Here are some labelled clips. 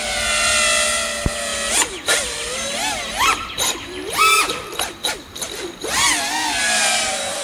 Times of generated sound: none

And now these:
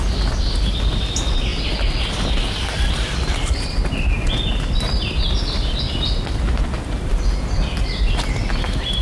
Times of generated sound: none

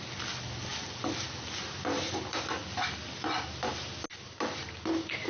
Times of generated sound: none

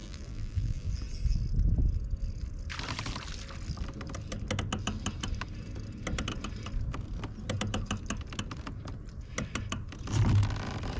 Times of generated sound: 0.0-0.9 (vocoder, BigVGAN v2)

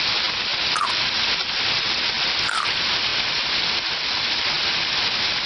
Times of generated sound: none

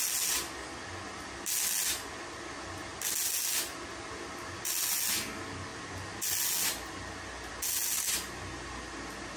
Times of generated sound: none

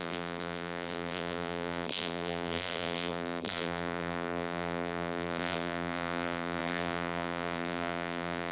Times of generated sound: 0.0-8.5 (vocoder, BigVGAN v2)

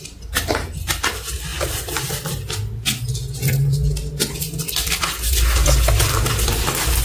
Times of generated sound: none